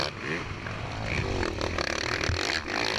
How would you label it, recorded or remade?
recorded